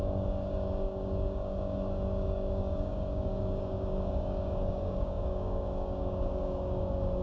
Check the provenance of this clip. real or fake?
fake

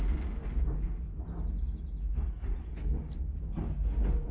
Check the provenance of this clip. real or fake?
real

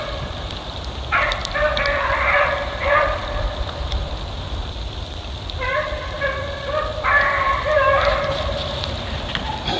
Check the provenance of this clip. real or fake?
fake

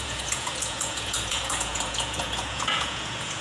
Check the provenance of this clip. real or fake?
fake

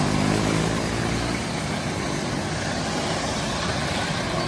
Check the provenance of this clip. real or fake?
real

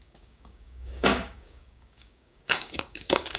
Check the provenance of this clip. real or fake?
fake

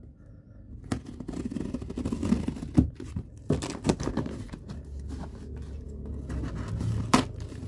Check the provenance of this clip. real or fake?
real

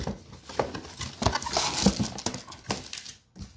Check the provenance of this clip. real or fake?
real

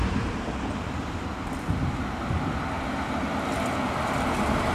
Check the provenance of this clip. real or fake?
real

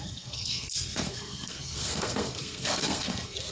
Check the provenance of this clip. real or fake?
fake